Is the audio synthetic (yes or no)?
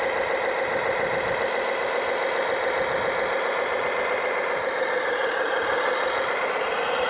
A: no